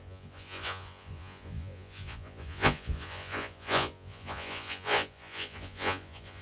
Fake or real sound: fake